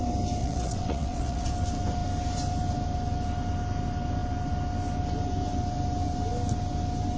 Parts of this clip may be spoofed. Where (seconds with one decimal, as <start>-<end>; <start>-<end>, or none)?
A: 0.4-1.5